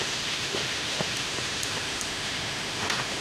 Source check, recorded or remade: remade